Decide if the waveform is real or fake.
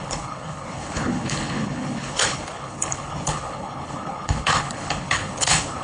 fake